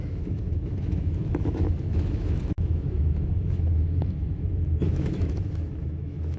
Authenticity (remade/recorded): remade